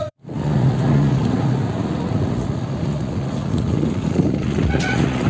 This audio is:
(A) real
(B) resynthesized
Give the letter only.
B